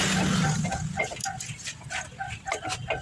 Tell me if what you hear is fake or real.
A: real